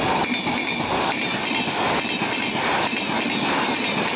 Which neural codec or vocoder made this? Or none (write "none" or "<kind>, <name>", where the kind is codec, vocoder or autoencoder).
none